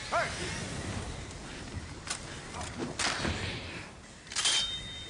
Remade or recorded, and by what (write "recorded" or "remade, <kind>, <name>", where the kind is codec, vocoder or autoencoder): recorded